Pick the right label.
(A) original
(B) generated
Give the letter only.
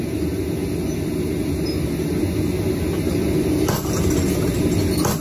A